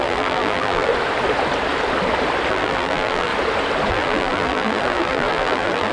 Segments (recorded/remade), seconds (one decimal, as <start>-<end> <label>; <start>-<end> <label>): 0.0-0.9 remade; 0.9-2.5 recorded; 2.5-3.3 remade; 3.3-3.9 recorded; 3.9-5.9 remade